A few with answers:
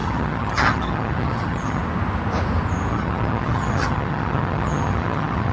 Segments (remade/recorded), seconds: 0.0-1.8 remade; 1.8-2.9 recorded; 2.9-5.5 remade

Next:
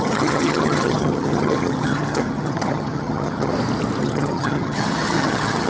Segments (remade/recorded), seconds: 0.0-3.5 remade; 3.5-4.0 recorded; 4.0-5.7 remade

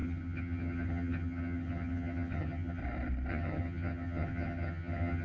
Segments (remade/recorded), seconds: 0.0-2.8 remade; 2.8-3.3 recorded; 3.3-5.2 remade

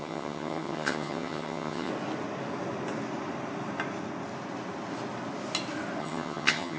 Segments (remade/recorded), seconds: 0.0-1.9 remade; 1.9-6.0 recorded; 6.0-6.8 remade

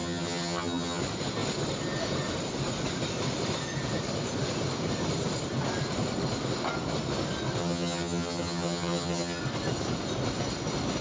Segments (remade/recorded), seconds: 0.0-1.0 remade; 1.0-7.6 recorded; 7.6-9.4 remade; 9.4-11.0 recorded

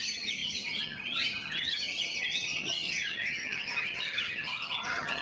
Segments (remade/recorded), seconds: 0.0-5.2 remade

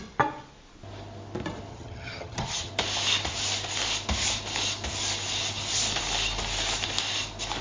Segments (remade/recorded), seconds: 0.0-1.7 recorded; 1.7-2.7 remade; 2.7-7.6 recorded

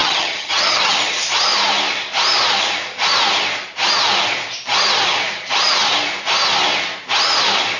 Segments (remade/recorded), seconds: 0.0-1.0 remade; 1.0-7.8 recorded